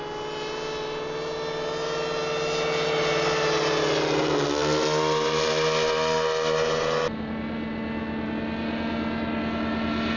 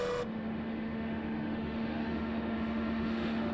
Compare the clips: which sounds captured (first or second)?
first